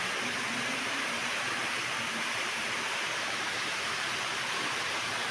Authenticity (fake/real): fake